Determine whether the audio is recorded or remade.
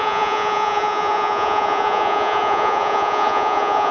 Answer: remade